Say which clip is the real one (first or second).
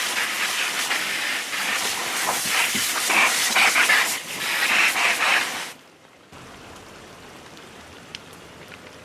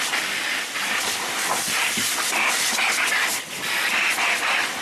second